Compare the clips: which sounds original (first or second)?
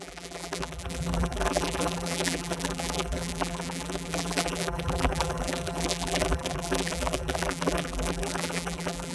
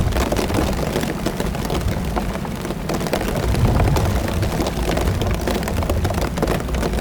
second